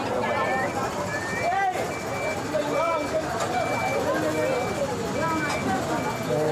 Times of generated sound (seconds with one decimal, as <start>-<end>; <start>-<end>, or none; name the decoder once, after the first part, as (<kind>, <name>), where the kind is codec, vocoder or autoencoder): none